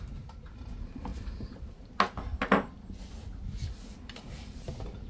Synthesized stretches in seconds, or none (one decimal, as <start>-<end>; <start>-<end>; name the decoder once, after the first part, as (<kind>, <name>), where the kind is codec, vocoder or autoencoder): none